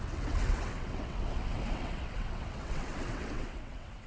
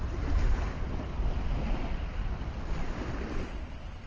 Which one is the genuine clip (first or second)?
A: second